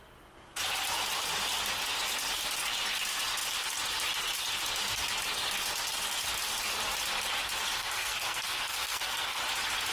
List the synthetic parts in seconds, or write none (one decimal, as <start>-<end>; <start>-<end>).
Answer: 7.8-9.4